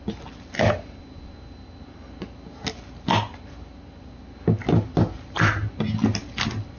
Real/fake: real